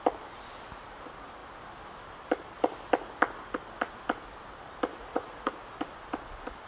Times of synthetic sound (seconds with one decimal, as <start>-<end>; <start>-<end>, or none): 4.9-5.5

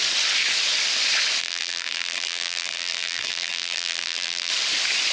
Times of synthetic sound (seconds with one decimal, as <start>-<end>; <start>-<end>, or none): 1.4-4.5

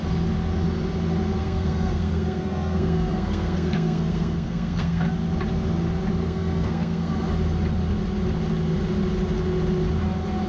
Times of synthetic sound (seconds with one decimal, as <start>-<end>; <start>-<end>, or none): 1.4-5.1; 6.2-7.3

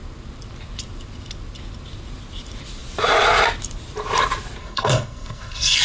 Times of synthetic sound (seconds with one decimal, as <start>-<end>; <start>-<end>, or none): 4.6-5.8